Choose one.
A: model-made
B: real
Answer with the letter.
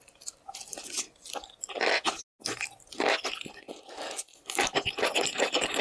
B